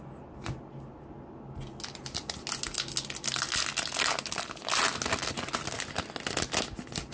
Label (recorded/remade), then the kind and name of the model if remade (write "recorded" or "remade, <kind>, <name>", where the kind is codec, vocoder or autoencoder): recorded